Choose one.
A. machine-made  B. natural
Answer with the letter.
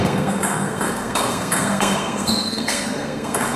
A